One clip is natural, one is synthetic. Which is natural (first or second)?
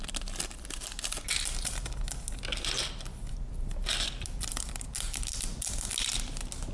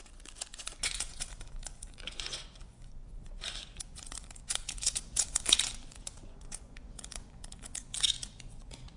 first